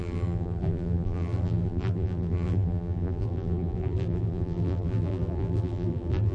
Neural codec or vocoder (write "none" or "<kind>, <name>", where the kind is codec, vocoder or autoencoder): vocoder, BigVGAN v2